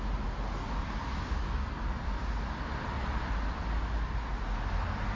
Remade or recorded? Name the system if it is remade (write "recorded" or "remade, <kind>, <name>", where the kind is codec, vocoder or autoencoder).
recorded